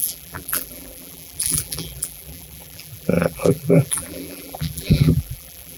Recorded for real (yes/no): no